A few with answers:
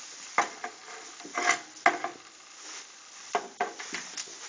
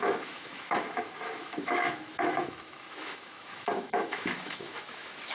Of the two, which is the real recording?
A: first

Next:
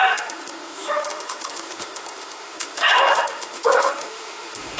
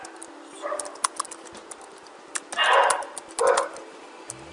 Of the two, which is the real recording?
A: second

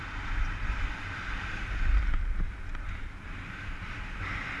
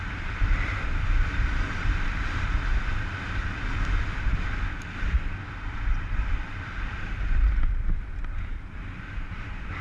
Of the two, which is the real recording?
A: first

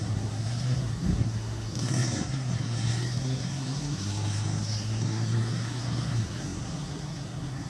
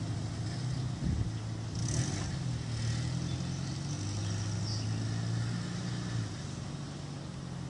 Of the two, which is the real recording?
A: second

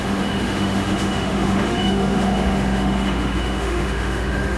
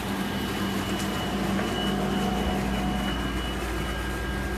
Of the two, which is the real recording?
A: second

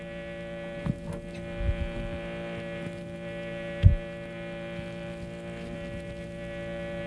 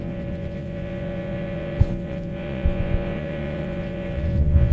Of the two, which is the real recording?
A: first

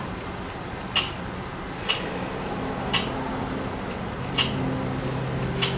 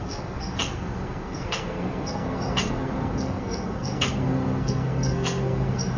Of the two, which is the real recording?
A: first